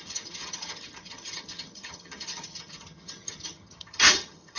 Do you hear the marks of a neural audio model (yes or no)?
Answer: yes